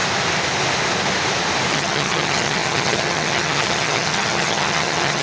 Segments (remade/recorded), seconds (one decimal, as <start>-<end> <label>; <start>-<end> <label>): 0.0-1.7 recorded; 1.7-5.2 remade

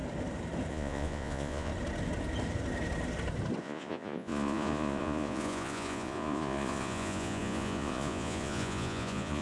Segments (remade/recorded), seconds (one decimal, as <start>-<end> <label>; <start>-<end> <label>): 0.0-0.7 recorded; 0.7-1.7 remade; 1.7-3.6 recorded; 3.6-9.4 remade

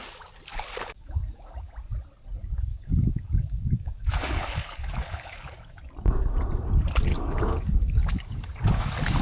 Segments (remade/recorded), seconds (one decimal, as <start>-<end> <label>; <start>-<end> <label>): 0.0-0.5 recorded; 0.5-1.7 remade; 1.7-2.7 recorded; 2.7-5.8 remade; 5.8-7.1 recorded; 7.1-9.2 remade

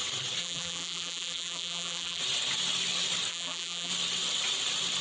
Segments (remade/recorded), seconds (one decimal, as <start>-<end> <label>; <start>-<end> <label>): 0.0-0.4 recorded; 0.4-2.2 remade; 2.2-3.3 recorded; 3.3-3.9 remade; 3.9-5.0 recorded

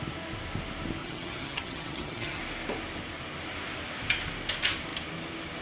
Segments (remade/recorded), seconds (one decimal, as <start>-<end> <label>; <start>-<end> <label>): 0.0-1.0 recorded; 1.0-2.4 remade; 2.4-5.6 recorded